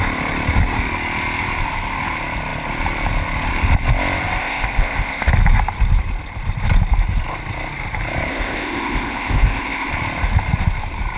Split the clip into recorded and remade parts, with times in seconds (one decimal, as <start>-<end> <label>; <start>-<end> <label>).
0.0-4.4 recorded; 4.4-5.3 remade; 5.3-8.3 recorded; 8.3-9.9 remade; 9.9-11.2 recorded